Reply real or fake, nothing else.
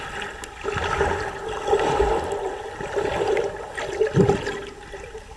real